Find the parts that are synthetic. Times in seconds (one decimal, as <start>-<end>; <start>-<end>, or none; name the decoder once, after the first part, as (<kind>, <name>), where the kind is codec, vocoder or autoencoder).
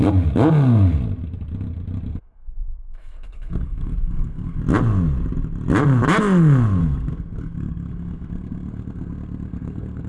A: 2.1-4.6 (codec, SNAC); 6.8-10.1